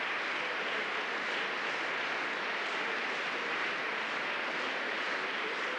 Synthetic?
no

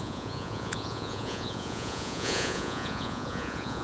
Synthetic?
yes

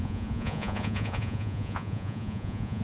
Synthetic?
yes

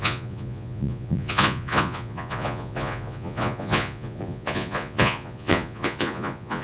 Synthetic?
yes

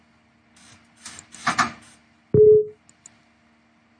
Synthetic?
no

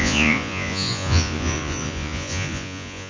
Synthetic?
yes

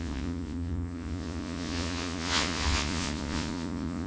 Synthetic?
yes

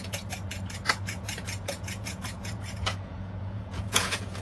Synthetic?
yes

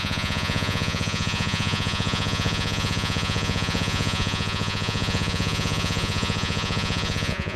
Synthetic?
yes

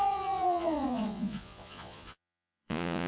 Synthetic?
yes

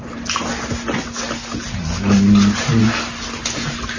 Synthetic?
no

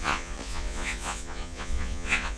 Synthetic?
yes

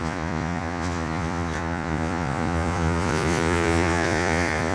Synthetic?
yes